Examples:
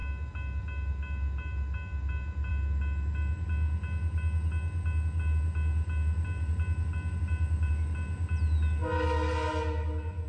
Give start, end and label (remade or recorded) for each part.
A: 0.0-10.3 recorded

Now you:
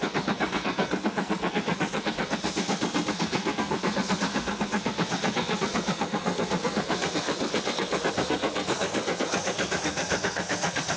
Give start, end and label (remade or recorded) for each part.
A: 0.0-11.0 remade

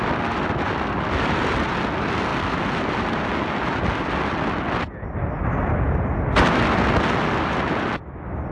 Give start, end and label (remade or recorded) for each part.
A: 0.0-8.5 recorded

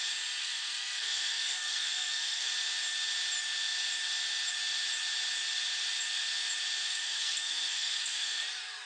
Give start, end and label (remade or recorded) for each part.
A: 0.0-0.4 recorded; 0.4-2.5 remade; 2.5-6.8 recorded; 6.8-8.4 remade; 8.4-8.9 recorded

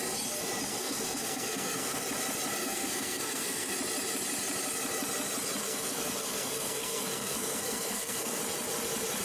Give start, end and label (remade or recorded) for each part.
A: 0.0-0.7 recorded; 0.7-2.0 remade; 2.0-2.6 recorded; 2.6-3.7 remade; 3.7-5.6 recorded; 5.6-8.4 remade; 8.4-9.2 recorded

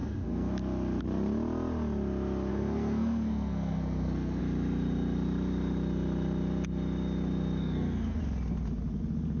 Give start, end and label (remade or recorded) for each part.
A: 0.0-0.5 remade; 0.5-2.5 recorded; 2.5-4.4 remade; 4.4-7.6 recorded; 7.6-8.2 remade; 8.2-9.4 recorded